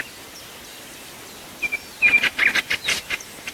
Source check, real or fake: real